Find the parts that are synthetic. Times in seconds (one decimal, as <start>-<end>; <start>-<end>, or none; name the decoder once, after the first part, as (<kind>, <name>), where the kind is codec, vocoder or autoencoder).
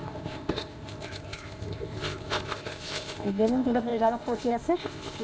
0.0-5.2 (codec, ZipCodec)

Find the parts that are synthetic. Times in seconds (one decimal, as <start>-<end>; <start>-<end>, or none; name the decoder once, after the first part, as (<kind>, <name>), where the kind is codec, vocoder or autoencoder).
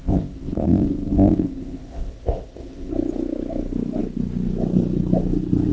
0.0-2.9 (codec, ZipCodec)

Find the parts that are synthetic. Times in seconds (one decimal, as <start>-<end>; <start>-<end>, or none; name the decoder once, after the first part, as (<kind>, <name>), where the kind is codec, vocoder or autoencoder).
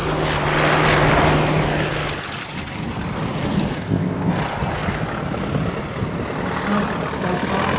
3.8-4.3 (codec, ZipCodec)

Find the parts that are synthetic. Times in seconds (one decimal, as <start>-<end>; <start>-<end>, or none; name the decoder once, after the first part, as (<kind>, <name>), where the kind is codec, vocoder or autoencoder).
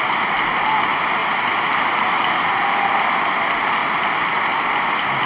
none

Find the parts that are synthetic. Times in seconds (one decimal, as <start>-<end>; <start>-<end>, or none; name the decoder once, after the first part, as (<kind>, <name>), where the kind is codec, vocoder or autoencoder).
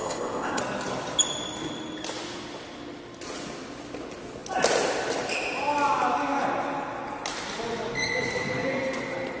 0.0-0.6 (codec, ZipCodec)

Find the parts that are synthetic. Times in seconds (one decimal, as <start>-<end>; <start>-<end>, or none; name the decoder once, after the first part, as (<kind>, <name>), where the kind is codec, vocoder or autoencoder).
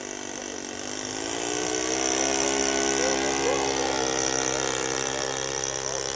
none